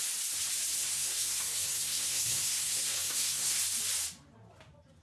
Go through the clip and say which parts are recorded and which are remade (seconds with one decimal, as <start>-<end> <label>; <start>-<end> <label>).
0.0-0.8 recorded; 0.8-3.6 remade; 3.6-5.0 recorded

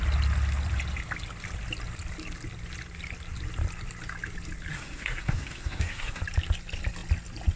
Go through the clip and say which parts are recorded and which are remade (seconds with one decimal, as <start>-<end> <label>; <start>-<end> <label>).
0.0-4.7 recorded; 4.7-6.2 remade; 6.2-7.6 recorded

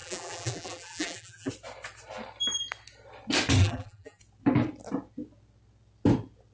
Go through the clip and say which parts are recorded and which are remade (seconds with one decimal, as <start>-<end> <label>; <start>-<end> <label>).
0.0-1.5 remade; 1.5-3.6 recorded; 3.6-4.2 remade; 4.2-6.5 recorded

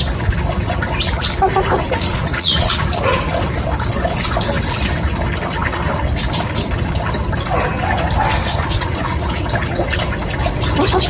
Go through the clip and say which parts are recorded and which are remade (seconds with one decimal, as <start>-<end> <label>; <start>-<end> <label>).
0.0-1.7 recorded; 1.7-3.2 remade; 3.2-8.4 recorded; 8.4-9.4 remade; 9.4-11.1 recorded

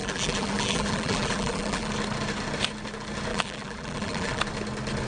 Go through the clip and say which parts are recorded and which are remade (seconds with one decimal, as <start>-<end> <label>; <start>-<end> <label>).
0.0-1.9 remade; 1.9-3.3 recorded; 3.3-4.4 remade; 4.4-5.1 recorded

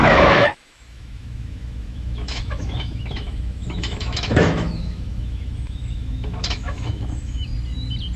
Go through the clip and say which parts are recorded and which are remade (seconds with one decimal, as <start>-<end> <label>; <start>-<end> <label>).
0.0-7.5 remade; 7.5-8.2 recorded